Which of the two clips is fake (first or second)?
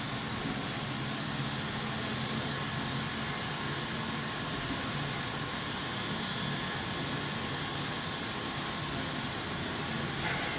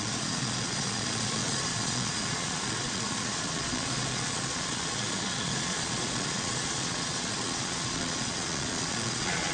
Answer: second